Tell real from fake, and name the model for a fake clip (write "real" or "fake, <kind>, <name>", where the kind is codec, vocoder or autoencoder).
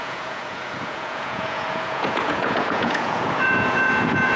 fake, vocoder, Vocos